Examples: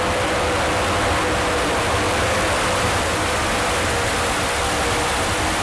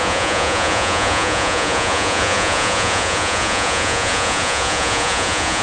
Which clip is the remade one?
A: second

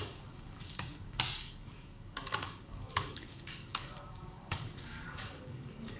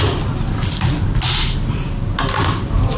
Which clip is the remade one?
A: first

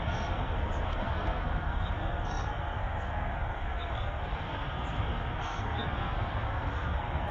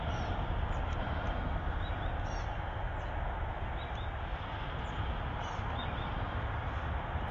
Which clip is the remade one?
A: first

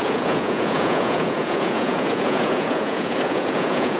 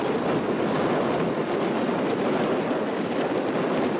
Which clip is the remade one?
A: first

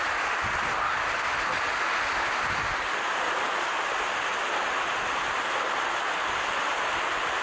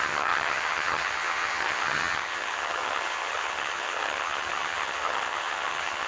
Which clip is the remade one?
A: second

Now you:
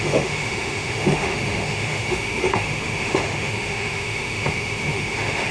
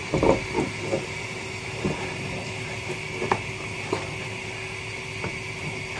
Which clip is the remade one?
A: first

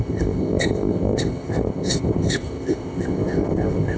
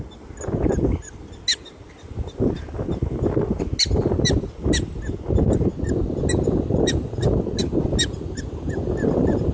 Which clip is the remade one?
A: first